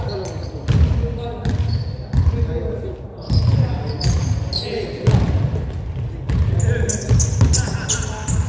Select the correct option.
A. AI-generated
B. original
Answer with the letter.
B